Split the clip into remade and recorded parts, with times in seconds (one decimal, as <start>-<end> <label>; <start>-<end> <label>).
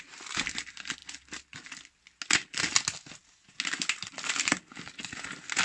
0.0-5.6 recorded